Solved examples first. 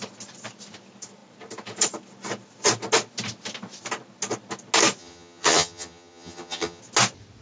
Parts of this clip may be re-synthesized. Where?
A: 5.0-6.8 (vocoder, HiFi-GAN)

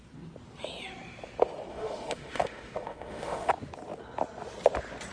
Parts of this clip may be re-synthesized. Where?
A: 1.7-3.5 (autoencoder, DAC-VAE)

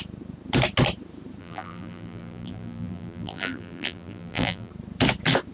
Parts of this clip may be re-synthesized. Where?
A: 1.4-4.7 (vocoder, BigVGAN v2)

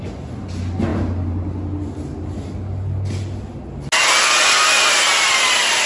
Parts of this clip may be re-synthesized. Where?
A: none